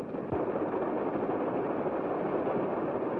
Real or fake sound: real